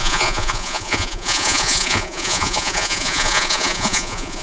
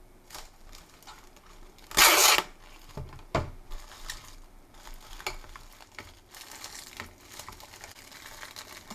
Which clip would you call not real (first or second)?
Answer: first